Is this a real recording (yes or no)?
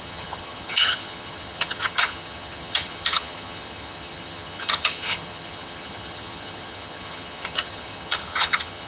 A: no